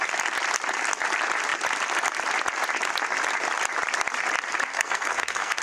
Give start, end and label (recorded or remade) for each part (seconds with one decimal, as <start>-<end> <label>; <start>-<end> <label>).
0.0-4.7 recorded; 4.7-5.6 remade